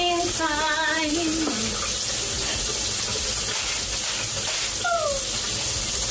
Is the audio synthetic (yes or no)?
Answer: no